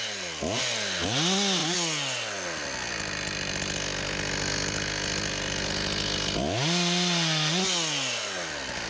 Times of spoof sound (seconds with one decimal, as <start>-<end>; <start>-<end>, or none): none